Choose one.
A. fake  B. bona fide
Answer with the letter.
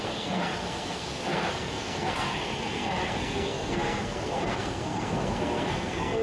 A